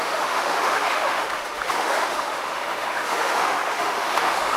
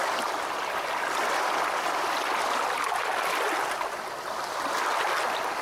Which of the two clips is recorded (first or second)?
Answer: second